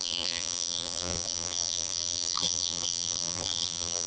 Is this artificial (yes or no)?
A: yes